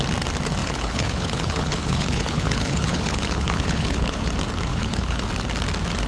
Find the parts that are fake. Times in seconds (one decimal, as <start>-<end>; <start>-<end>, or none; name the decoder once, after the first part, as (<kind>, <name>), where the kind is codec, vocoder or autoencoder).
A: 0.6-4.3 (codec, HILCodec); 4.7-5.3

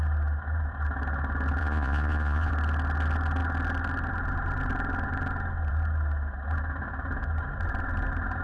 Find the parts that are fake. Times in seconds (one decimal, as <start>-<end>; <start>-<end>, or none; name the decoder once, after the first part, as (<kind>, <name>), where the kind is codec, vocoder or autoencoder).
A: 1.6-2.5 (vocoder, Vocos)

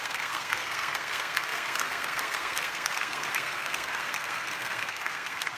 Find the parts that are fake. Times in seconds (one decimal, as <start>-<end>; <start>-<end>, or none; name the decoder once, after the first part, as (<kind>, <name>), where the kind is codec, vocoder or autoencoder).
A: 0.0-5.6 (codec, SNAC)

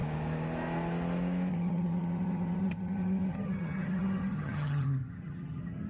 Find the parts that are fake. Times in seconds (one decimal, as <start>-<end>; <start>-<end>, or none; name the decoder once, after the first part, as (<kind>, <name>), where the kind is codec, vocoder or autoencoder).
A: 1.5-5.9 (vocoder, HiFi-GAN)

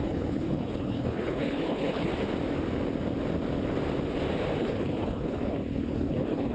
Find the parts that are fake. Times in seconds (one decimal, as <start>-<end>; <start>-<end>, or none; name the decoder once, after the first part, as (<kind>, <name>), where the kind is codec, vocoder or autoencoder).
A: 0.0-2.1 (codec, HILCodec); 4.6-6.5